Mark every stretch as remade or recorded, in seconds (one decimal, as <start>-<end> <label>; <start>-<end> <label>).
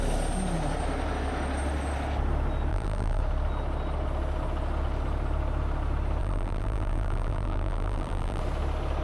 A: 0.0-2.7 recorded; 2.7-3.2 remade; 3.2-6.2 recorded; 6.2-8.4 remade; 8.4-9.0 recorded